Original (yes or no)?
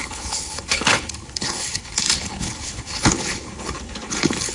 no